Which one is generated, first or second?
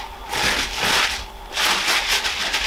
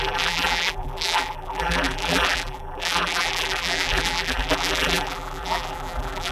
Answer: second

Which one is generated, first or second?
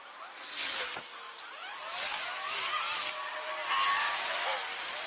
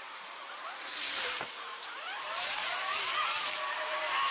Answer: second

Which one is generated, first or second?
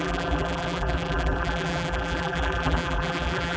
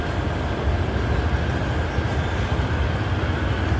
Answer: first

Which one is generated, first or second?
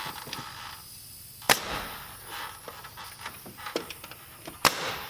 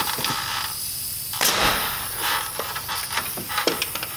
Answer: second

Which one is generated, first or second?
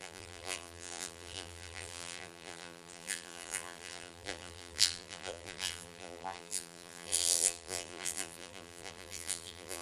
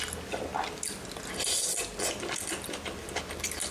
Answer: first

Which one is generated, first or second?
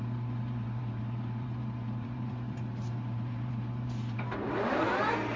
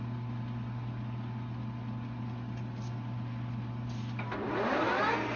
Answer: first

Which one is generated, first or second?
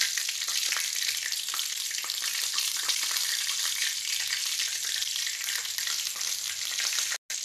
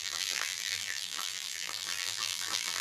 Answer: second